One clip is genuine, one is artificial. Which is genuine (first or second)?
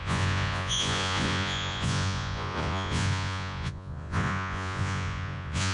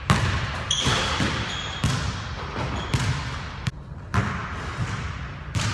second